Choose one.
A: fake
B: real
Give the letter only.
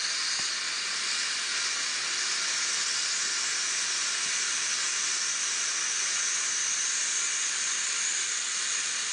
B